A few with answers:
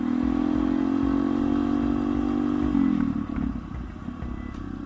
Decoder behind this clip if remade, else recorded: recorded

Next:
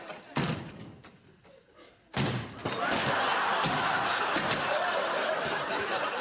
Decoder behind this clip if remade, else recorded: recorded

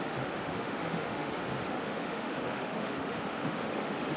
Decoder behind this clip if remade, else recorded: remade, autoencoder, DAC-VAE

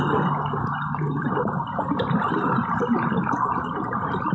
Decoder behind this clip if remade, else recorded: recorded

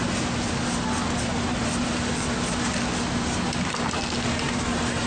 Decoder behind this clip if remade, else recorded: recorded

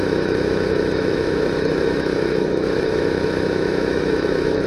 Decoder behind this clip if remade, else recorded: remade, autoencoder, DAC-VAE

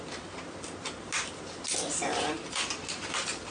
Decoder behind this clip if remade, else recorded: recorded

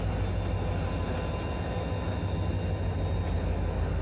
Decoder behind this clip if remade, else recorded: recorded